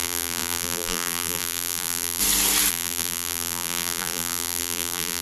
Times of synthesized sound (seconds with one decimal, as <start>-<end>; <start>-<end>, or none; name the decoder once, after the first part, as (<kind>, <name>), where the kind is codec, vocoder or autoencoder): 0.0-2.2 (vocoder, BigVGAN v2); 2.7-5.2